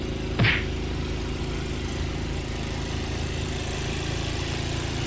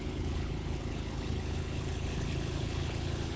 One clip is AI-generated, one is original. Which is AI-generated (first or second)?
second